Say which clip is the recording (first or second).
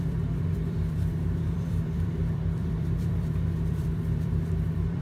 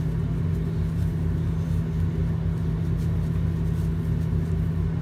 second